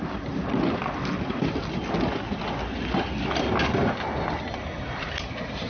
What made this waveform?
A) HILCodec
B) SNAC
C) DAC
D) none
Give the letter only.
D